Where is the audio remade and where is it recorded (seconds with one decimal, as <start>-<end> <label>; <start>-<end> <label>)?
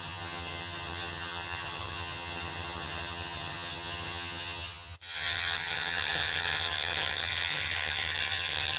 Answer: 0.0-8.8 remade